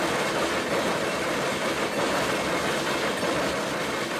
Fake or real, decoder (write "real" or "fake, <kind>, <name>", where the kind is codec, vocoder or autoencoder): real